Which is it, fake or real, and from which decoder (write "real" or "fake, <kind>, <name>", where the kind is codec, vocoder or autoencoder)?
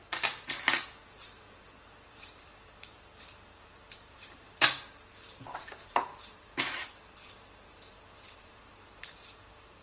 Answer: fake, vocoder, BigVGAN v2